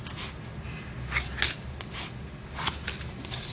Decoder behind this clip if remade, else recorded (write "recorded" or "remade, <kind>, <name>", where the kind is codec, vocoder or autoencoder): recorded